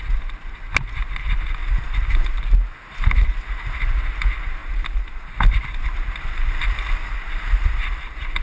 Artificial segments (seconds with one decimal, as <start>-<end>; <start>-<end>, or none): 1.6-2.4; 4.6-8.4